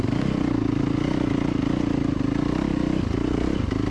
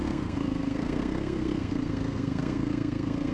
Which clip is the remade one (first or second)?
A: second